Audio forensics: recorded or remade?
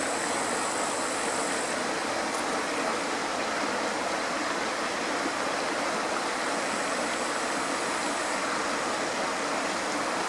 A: recorded